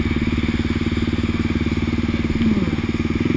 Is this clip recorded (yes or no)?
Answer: yes